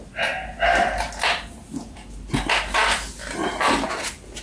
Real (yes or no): yes